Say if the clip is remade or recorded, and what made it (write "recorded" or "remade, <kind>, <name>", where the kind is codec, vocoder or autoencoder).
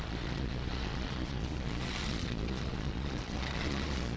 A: remade, vocoder, Vocos